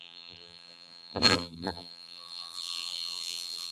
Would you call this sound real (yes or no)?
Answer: no